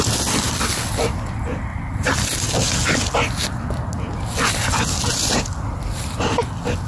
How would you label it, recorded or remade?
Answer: recorded